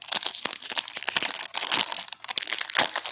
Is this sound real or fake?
real